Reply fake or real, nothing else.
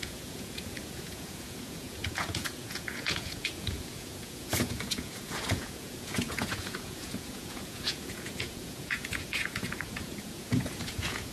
fake